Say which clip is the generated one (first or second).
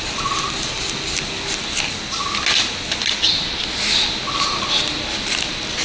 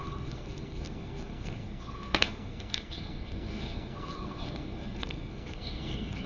second